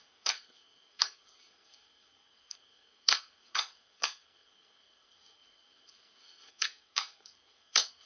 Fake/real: fake